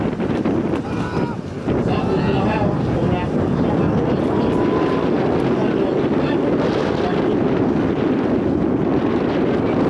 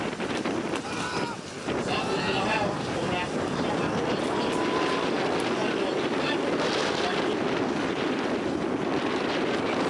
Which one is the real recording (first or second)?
first